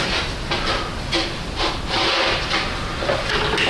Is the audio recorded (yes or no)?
yes